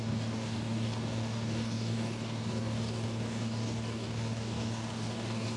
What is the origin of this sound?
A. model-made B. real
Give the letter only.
A